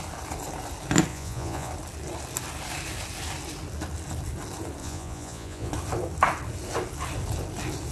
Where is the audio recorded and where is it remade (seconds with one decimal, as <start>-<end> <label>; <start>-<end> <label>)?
0.0-1.1 recorded; 1.1-1.7 remade; 1.7-4.8 recorded; 4.8-5.7 remade; 5.7-7.9 recorded